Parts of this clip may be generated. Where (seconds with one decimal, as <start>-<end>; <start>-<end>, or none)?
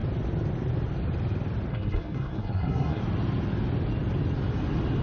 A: 1.7-3.0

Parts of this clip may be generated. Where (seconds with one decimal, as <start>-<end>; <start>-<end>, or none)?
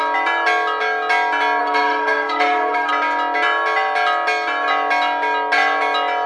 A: 1.6-2.9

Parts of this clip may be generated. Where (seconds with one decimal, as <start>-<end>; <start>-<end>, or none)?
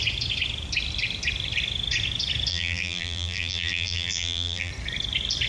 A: 2.5-4.7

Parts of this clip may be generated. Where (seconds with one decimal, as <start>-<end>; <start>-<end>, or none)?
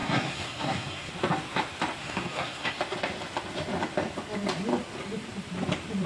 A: 0.0-1.1; 2.0-2.8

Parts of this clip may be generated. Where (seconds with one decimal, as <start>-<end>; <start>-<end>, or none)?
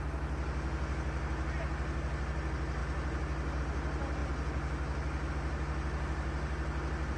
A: none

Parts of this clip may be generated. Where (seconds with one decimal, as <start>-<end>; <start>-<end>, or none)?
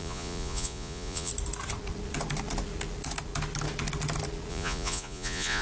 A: 0.0-1.3; 4.5-5.6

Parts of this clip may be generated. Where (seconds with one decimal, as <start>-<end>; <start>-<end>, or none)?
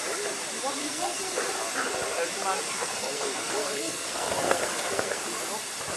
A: 0.8-1.4; 2.8-5.2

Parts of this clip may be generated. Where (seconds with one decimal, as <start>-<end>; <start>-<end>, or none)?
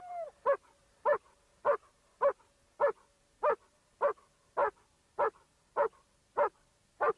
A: none